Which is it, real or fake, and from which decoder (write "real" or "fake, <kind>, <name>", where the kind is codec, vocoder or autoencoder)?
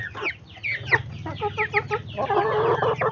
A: real